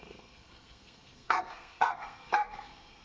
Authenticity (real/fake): fake